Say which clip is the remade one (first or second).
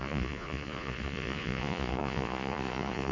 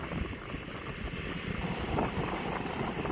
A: first